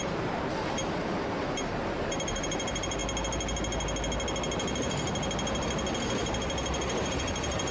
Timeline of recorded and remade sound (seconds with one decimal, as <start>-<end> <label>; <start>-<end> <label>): 0.0-3.0 remade; 3.0-7.1 recorded; 7.1-7.7 remade